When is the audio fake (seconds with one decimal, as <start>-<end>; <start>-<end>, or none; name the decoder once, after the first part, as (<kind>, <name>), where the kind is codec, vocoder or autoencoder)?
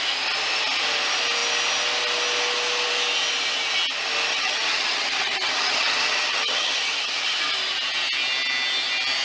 4.3-7.4 (vocoder, HiFi-GAN)